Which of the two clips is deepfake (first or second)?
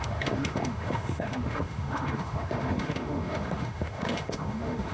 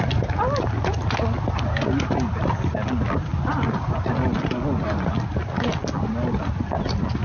first